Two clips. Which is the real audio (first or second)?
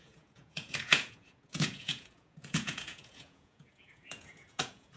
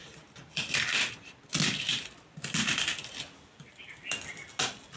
second